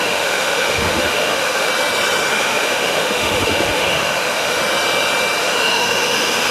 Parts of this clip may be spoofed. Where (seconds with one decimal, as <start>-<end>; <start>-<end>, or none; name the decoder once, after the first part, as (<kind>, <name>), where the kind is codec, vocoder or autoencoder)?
0.0-1.7 (autoencoder, DAC-VAE); 2.3-4.6; 5.4-6.5